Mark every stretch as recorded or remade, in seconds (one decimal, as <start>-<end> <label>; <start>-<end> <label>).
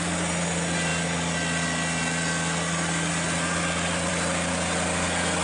0.0-5.4 recorded